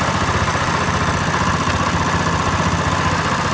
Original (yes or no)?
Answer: yes